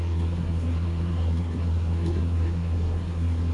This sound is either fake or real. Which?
fake